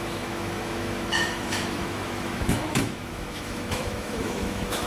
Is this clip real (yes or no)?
no